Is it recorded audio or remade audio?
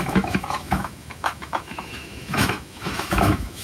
remade